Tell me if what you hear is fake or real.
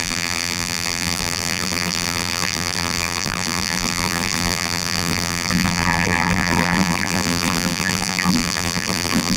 fake